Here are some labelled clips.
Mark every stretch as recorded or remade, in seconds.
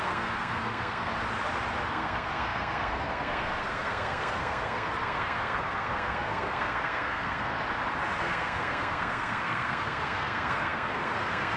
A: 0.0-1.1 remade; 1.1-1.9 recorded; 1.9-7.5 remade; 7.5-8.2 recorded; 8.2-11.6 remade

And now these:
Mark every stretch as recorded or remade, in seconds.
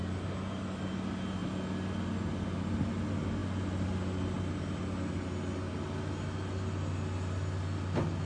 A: 0.0-8.3 recorded